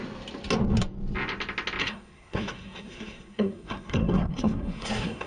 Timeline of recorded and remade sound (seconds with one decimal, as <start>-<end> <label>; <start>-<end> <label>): 0.0-1.8 recorded; 1.8-5.3 remade